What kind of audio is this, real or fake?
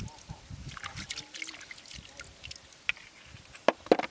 real